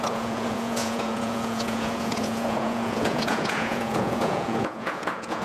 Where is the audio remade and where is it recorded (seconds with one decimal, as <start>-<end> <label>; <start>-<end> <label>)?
0.0-5.4 remade